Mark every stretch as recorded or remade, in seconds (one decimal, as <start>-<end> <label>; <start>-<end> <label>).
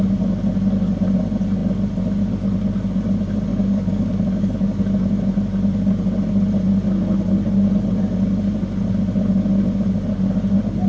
0.0-3.5 recorded; 3.5-4.8 remade; 4.8-10.9 recorded